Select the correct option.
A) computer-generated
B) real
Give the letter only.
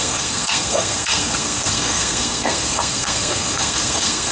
A